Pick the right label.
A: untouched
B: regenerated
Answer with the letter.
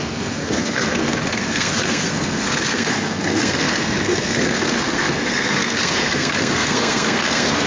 B